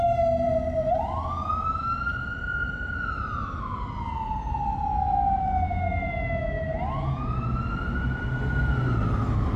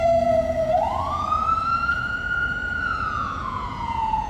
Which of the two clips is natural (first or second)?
first